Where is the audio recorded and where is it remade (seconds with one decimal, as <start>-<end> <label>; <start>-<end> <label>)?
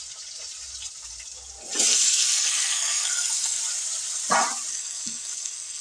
0.0-1.9 recorded; 1.9-3.6 remade; 3.6-4.7 recorded; 4.7-5.8 remade